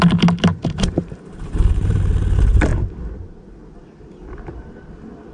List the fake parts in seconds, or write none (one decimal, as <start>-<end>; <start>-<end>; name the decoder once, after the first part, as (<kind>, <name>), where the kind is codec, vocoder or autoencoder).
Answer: 0.5-2.0 (vocoder, BigVGAN v2)